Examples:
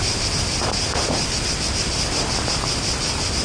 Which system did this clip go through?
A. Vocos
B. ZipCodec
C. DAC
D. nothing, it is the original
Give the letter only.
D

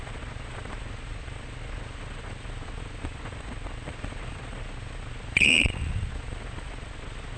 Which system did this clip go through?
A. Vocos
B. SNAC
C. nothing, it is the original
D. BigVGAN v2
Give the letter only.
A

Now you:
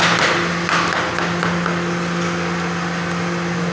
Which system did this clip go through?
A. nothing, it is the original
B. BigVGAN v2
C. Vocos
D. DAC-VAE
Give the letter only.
A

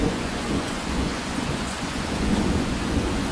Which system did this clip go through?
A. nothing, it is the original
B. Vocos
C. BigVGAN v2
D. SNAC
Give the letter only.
B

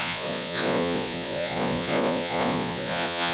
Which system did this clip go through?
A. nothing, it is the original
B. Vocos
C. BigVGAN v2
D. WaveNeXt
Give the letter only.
B